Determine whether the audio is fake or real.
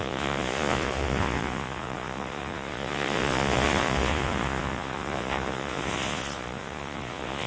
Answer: fake